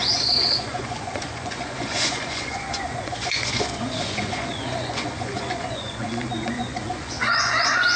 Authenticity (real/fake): fake